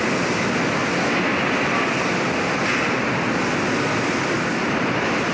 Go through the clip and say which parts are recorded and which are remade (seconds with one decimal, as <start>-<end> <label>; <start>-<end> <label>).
0.0-5.3 recorded